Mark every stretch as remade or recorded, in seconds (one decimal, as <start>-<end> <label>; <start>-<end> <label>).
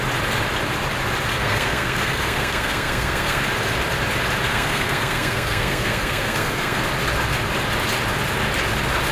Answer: 0.0-1.3 recorded; 1.3-3.4 remade; 3.4-4.5 recorded; 4.5-6.8 remade; 6.8-9.1 recorded